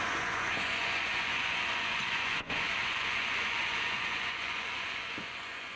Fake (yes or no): yes